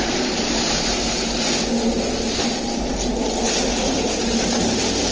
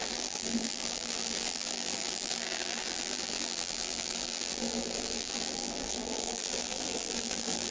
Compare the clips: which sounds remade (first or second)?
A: second